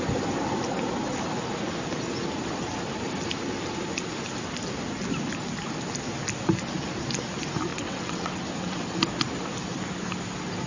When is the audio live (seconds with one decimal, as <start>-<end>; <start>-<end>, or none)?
0.0-7.7; 8.4-10.7